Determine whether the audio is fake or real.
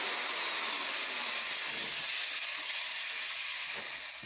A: real